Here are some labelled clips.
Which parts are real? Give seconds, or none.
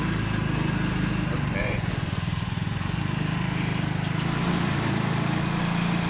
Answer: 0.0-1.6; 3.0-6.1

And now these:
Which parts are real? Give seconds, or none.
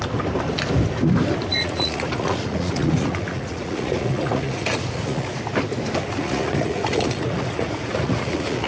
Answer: 0.0-1.5; 5.4-6.0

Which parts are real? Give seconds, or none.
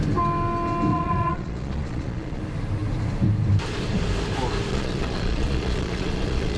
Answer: 0.0-0.9; 2.4-4.7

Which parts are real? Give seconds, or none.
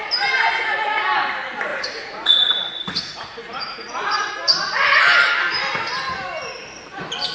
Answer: 0.0-1.7; 4.3-7.3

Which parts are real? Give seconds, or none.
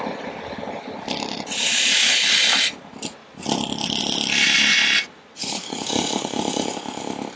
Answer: 0.0-5.4; 7.0-7.4